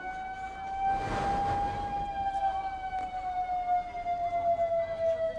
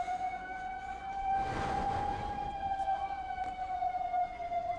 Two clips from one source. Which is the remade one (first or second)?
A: second